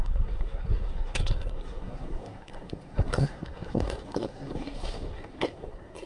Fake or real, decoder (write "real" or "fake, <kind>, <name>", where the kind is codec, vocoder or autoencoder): fake, codec, SNAC